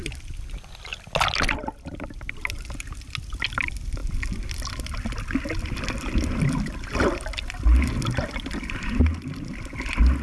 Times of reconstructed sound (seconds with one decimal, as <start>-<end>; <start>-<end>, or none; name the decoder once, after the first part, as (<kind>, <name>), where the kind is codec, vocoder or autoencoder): none